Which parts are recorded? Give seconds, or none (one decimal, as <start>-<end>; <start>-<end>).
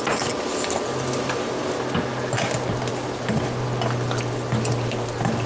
0.0-5.5